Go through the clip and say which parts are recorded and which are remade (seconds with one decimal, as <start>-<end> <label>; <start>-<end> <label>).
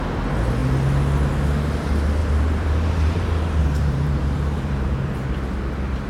0.0-2.2 recorded; 2.2-5.3 remade; 5.3-6.1 recorded